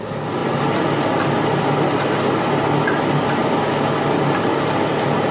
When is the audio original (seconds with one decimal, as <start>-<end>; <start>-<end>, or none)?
0.0-5.3